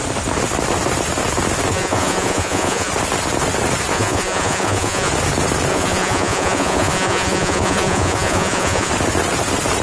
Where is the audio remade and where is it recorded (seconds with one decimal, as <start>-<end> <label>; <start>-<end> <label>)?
0.0-1.7 recorded; 1.7-2.9 remade; 2.9-3.9 recorded; 3.9-5.1 remade; 5.1-5.7 recorded; 5.7-8.9 remade; 8.9-9.8 recorded

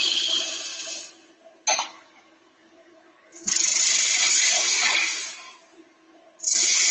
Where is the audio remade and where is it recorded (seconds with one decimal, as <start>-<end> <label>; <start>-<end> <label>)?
0.0-1.9 recorded; 1.9-3.8 remade; 3.8-6.9 recorded

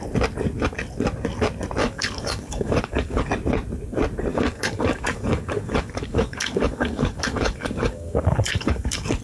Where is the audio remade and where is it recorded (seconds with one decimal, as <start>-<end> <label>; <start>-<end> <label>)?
0.0-1.8 recorded; 1.8-3.3 remade; 3.3-4.3 recorded; 4.3-9.2 remade

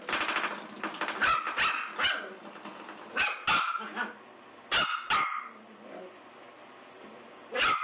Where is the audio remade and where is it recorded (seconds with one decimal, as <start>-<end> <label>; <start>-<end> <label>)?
0.0-7.8 recorded

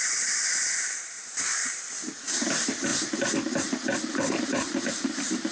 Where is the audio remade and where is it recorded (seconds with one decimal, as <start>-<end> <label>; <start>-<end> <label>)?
0.0-2.9 remade; 2.9-4.1 recorded; 4.1-5.5 remade

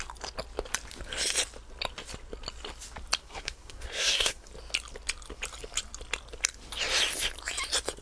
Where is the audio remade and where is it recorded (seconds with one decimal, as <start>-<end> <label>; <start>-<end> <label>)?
0.0-3.2 recorded; 3.2-4.5 remade; 4.5-8.0 recorded

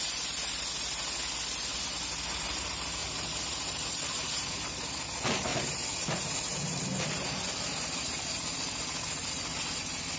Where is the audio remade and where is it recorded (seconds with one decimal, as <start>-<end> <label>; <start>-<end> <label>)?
0.0-10.2 recorded